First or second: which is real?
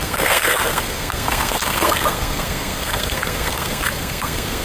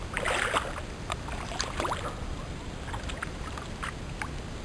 second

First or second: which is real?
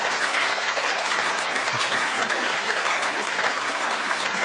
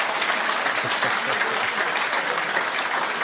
second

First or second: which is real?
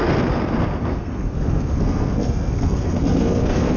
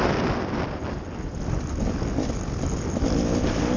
second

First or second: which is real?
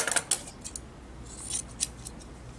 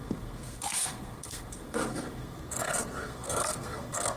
first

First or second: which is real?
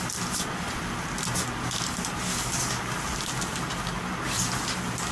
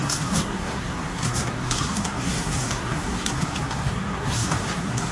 first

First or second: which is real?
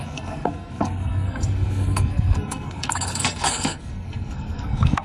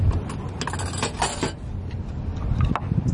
second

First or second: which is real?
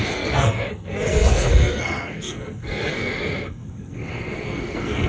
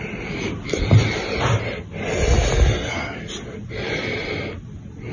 second